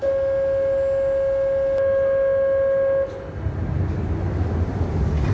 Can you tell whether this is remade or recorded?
recorded